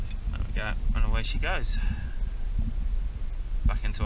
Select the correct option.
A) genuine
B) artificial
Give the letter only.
A